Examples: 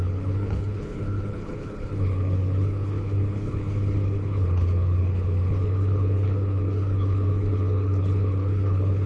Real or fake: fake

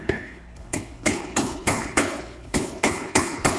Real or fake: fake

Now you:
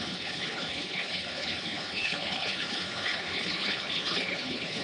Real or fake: fake